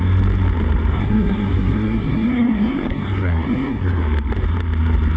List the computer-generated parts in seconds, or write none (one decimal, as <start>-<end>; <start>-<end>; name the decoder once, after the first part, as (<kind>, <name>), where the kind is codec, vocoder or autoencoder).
0.9-4.0 (codec, SNAC)